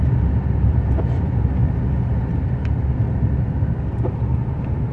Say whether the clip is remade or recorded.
recorded